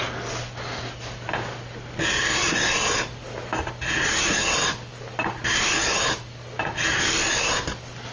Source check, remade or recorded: recorded